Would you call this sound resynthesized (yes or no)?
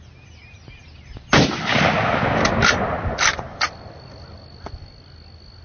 no